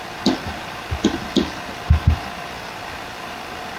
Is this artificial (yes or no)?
no